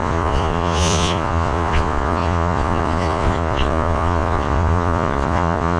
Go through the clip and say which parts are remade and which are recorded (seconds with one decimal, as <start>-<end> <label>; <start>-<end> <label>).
0.0-5.8 remade

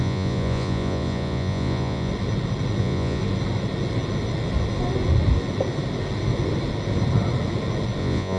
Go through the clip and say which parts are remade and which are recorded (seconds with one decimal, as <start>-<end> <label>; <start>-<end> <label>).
0.0-2.1 remade; 2.1-2.8 recorded; 2.8-3.2 remade; 3.2-8.0 recorded; 8.0-8.4 remade